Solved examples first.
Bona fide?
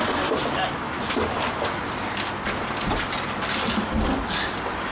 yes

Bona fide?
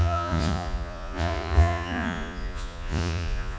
no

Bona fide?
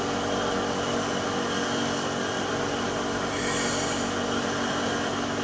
yes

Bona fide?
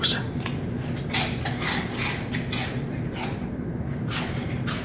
yes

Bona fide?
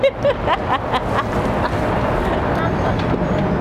yes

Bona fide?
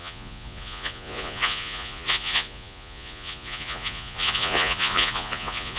no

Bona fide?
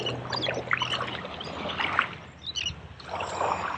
yes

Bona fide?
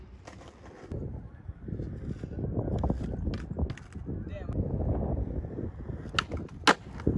yes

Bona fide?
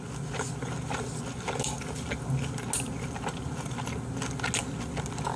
yes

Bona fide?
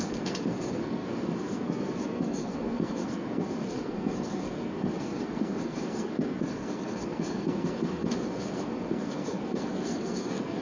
no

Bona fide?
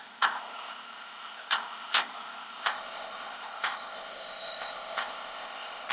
no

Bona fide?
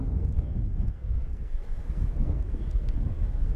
no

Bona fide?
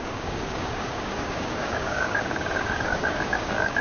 no